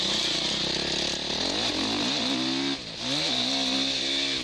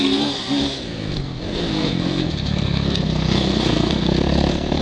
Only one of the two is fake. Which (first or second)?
second